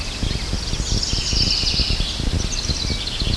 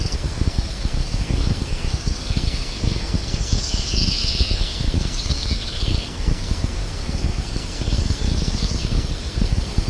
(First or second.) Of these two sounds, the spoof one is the second